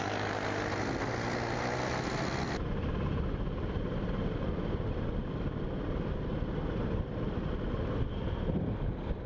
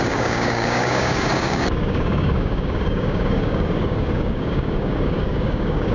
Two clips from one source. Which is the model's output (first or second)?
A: second